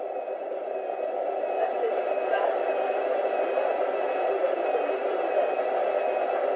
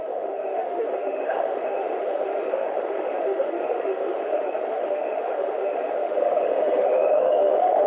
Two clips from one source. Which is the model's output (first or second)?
second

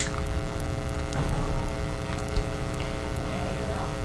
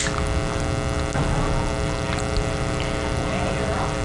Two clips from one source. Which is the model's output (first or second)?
first